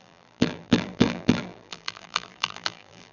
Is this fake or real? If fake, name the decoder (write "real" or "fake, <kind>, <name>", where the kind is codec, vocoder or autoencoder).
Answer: fake, vocoder, BigVGAN v2